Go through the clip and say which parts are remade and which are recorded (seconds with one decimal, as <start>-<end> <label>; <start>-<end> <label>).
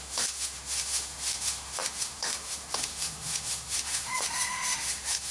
0.0-5.3 remade